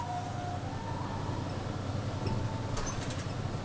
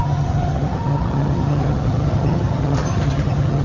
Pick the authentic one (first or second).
first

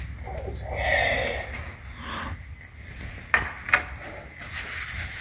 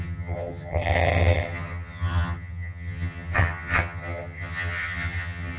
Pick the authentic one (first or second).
first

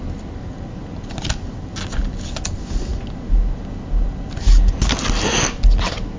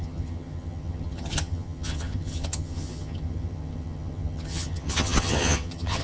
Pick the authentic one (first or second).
first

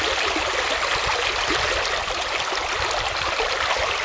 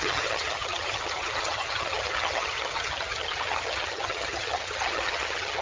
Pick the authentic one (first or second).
first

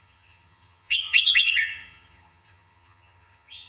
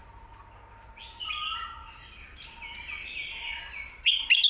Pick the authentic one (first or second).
second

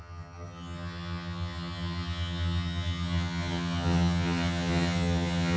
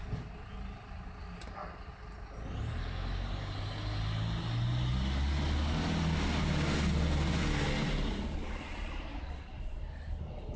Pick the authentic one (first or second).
second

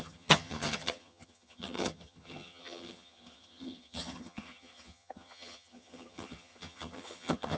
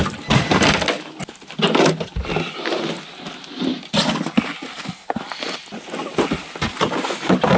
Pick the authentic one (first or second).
second